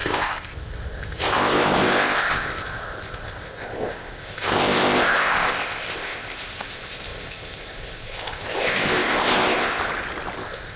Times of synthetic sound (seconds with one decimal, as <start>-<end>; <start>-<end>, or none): 0.0-9.8; 10.4-10.8